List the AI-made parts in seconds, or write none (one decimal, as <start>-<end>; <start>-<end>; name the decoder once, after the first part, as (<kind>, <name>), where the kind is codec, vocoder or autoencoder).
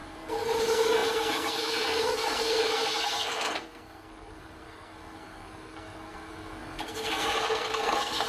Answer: 0.0-8.3 (codec, SNAC)